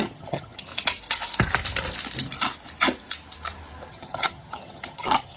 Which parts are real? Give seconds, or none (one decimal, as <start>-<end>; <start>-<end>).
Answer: 0.7-3.9